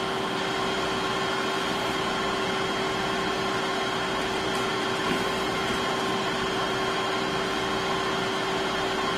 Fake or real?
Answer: real